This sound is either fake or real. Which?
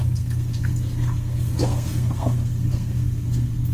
fake